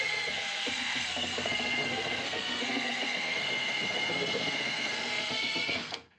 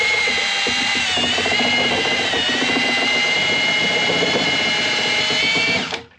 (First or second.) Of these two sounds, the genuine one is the second